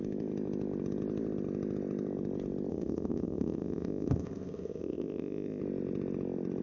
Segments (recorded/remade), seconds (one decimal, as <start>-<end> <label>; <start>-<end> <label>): 0.0-2.7 recorded; 2.7-5.6 remade; 5.6-6.6 recorded